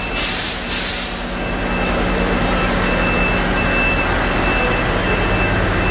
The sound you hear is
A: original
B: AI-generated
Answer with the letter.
A